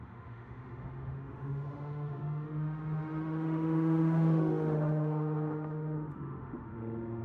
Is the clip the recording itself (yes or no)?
no